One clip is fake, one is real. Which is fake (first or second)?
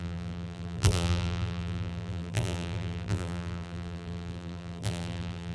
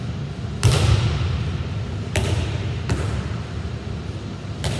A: first